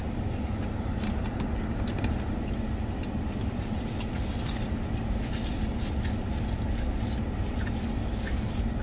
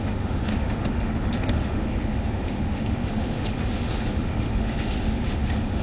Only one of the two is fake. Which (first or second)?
second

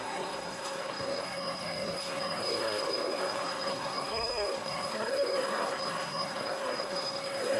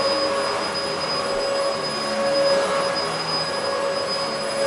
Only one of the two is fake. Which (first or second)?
first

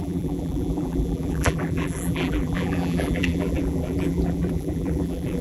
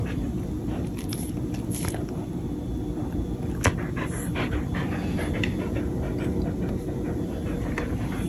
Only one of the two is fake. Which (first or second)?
first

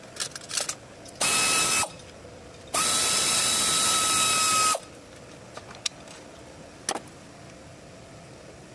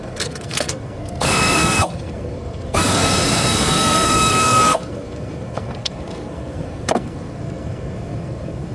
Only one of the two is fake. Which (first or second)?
second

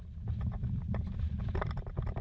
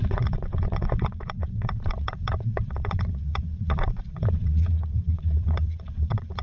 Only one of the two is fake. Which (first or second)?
second